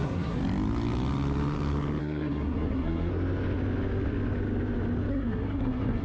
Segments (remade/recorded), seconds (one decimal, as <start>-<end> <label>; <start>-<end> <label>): 0.0-0.4 remade; 0.4-2.0 recorded; 2.0-3.1 remade; 3.1-5.1 recorded; 5.1-6.0 remade